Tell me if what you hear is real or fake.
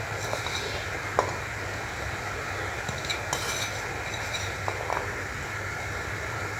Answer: real